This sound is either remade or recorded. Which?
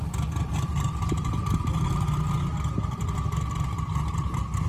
recorded